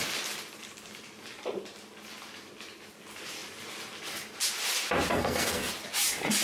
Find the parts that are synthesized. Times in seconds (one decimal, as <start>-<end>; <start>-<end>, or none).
5.1-5.7